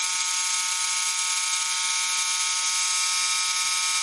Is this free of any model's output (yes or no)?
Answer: yes